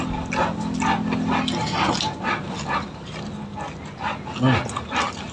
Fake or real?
real